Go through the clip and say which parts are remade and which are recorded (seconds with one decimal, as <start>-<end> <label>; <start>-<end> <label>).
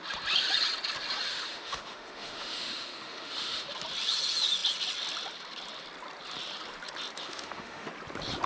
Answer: 0.0-1.3 recorded; 1.3-3.7 remade; 3.7-7.2 recorded; 7.2-7.9 remade; 7.9-8.5 recorded